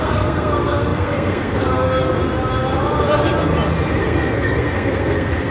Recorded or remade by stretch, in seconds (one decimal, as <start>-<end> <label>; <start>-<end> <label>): 0.0-2.2 remade; 2.2-4.0 recorded; 4.0-5.5 remade